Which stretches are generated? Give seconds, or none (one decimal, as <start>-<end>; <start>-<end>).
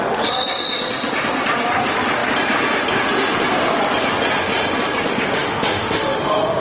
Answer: 5.1-6.6